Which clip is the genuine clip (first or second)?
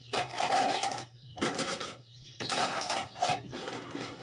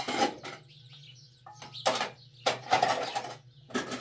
second